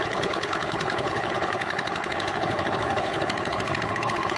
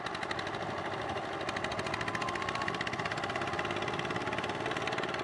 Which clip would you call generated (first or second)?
first